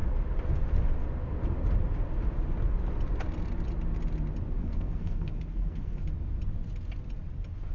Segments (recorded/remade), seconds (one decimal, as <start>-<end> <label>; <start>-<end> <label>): 0.0-4.6 recorded; 4.6-6.0 remade; 6.0-7.7 recorded